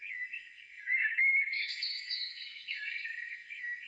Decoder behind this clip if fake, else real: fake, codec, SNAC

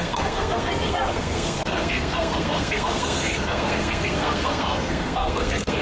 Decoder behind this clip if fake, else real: fake, codec, SNAC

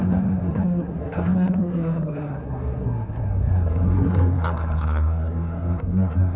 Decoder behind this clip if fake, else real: fake, codec, SNAC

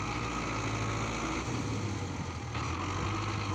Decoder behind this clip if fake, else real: real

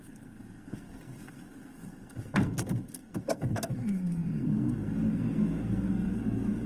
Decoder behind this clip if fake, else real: fake, codec, SNAC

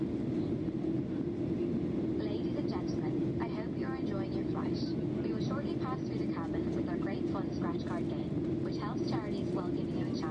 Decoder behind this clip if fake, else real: real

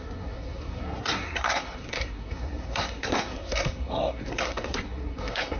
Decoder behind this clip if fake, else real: fake, codec, SNAC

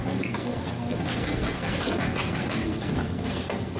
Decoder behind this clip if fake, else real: fake, codec, SNAC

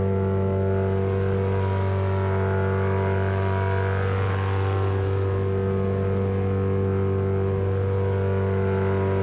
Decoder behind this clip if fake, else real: real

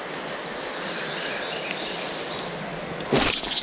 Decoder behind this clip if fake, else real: real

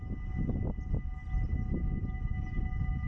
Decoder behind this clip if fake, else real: real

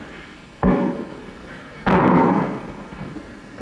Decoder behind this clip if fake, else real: fake, codec, SNAC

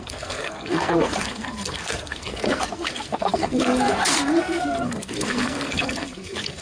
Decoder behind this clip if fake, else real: fake, codec, SNAC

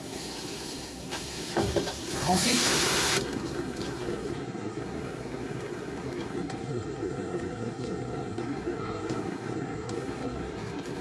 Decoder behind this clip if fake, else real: fake, codec, SNAC